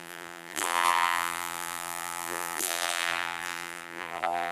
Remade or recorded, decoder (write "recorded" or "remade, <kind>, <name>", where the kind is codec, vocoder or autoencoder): remade, vocoder, BigVGAN v2